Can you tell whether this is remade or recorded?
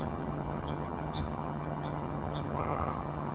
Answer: remade